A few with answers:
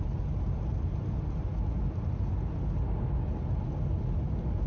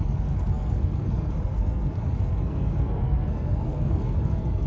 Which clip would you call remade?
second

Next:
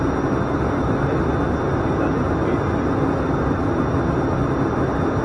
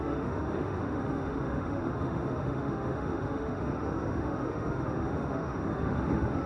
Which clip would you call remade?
second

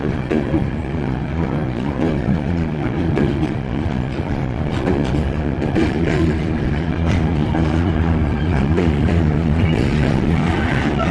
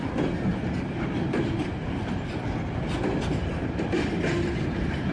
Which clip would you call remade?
first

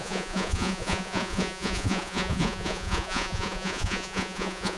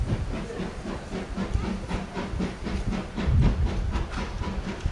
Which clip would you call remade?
first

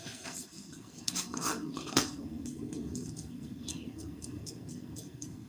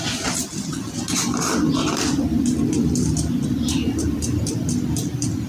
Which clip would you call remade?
first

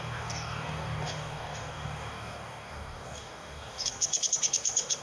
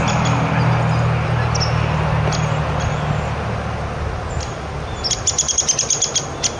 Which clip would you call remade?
first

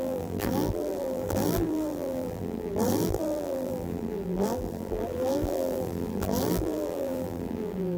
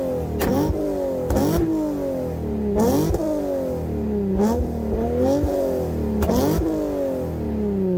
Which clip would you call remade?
first